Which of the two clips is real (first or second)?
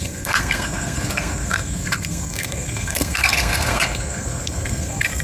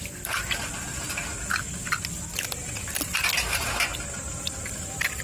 second